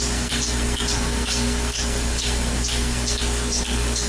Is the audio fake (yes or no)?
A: yes